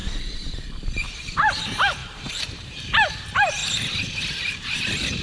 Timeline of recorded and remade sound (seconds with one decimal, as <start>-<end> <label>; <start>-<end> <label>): 0.0-3.6 remade; 3.6-4.4 recorded; 4.4-5.2 remade